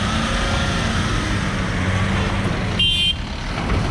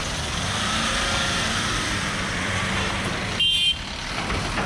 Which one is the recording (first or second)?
first